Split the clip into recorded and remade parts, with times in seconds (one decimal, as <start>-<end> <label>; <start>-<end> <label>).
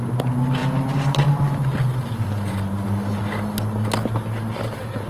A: 0.0-5.1 recorded